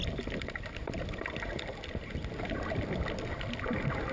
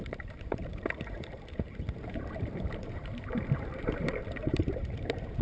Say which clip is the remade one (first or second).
second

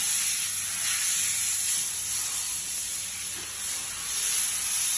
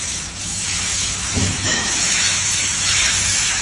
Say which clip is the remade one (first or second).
second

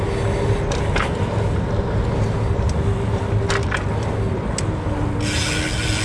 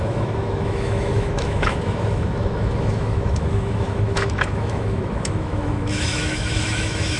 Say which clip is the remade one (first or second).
second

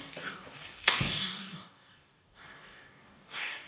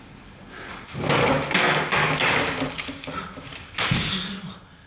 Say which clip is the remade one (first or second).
first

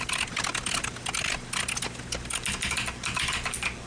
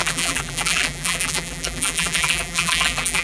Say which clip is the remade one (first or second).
second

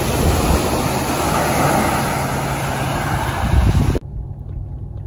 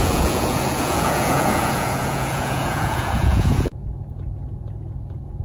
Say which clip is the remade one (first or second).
second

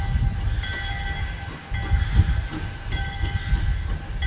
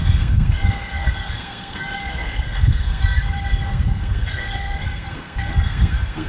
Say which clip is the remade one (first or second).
second